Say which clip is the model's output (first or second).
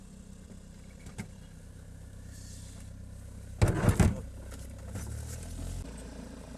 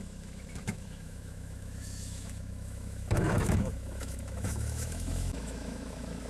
second